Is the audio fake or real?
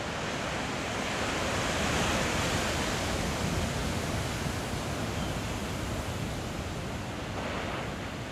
real